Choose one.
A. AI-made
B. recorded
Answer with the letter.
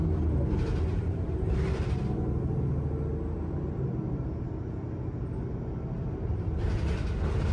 B